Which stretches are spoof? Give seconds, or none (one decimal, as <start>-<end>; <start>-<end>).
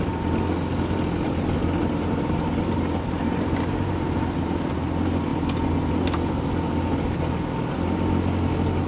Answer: 1.6-4.7